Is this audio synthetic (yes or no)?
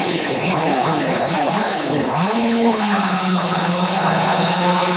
yes